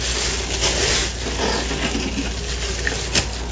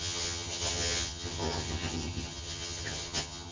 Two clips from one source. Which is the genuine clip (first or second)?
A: first